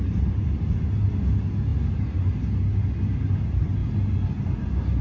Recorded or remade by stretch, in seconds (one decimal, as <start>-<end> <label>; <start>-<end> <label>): 0.0-5.0 recorded